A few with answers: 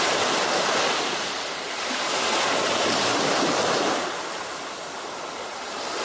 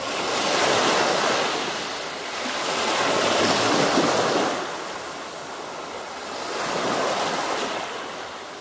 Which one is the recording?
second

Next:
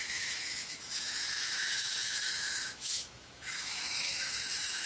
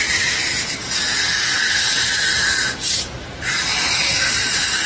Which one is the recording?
second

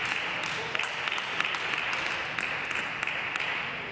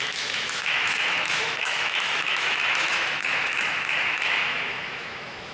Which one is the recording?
first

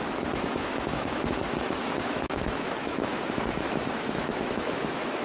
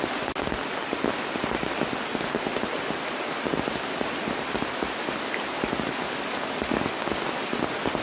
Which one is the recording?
second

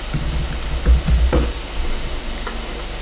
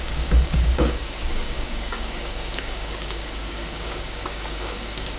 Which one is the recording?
first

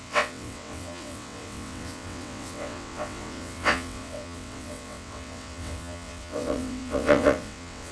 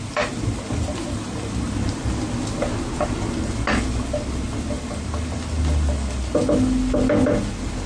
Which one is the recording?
second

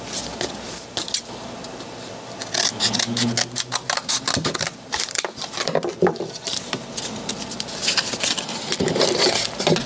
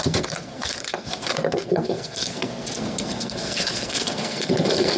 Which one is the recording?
first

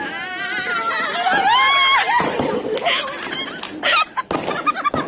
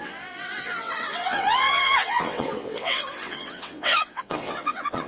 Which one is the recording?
first